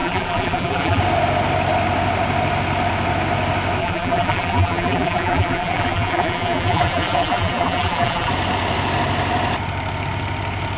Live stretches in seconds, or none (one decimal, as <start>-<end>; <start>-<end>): 1.0-3.8; 8.3-10.8

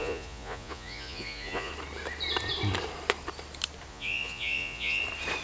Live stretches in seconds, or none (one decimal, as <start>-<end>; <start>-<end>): 1.7-3.9; 5.0-5.4